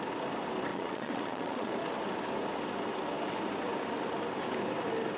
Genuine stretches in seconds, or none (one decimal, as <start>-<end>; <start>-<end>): 0.0-0.7; 1.7-5.2